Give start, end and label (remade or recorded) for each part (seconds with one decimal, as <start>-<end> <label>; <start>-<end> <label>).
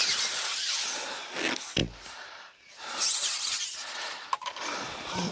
0.0-5.3 recorded